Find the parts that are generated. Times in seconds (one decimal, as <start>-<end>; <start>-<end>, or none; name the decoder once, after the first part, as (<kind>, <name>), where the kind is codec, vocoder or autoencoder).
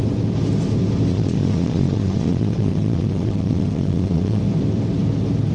1.1-4.4 (vocoder, Vocos)